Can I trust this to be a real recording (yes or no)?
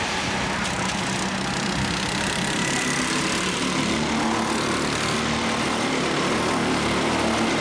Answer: yes